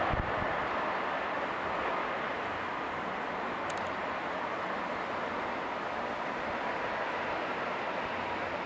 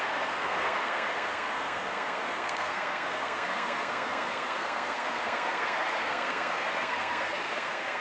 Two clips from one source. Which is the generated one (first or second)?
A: second